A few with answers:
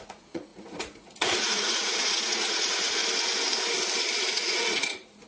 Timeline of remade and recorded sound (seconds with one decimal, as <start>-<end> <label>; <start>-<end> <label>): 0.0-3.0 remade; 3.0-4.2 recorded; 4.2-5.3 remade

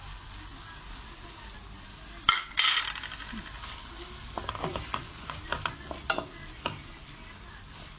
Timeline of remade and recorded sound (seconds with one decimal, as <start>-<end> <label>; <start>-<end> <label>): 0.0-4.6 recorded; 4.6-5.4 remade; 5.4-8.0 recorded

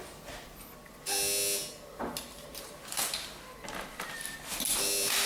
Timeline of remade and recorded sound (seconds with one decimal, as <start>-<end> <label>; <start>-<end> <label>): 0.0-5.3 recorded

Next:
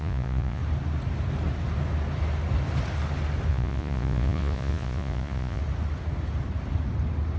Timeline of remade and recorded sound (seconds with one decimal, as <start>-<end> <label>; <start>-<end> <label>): 0.0-0.6 remade; 0.6-3.5 recorded; 3.5-5.6 remade; 5.6-7.4 recorded